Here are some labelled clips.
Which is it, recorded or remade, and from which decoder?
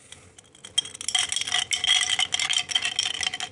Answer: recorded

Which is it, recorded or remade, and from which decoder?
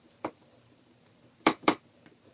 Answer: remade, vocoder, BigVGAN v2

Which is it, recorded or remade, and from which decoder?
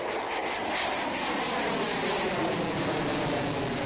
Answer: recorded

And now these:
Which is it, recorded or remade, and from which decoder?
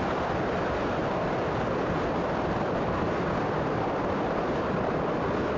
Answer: remade, vocoder, BigVGAN v2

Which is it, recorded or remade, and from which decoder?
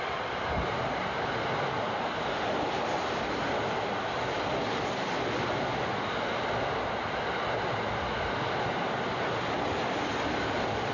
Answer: recorded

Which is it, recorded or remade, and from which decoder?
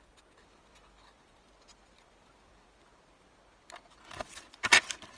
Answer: recorded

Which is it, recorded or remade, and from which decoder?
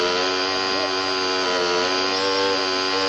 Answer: recorded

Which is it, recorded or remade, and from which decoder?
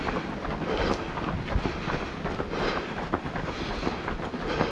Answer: recorded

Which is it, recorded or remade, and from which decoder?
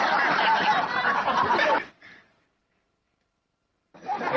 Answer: remade, vocoder, BigVGAN v2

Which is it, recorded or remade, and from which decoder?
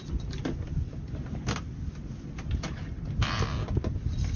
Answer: recorded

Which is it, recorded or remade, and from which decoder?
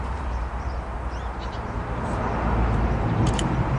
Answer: remade, vocoder, BigVGAN v2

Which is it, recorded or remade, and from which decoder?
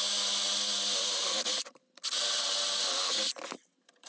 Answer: recorded